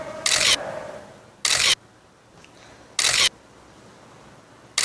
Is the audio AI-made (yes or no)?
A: no